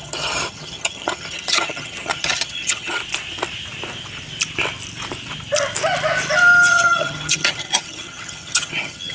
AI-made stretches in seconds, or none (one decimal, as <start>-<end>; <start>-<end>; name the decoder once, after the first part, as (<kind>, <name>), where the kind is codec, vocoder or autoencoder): 0.0-3.0 (vocoder, HiFi-GAN); 6.7-9.1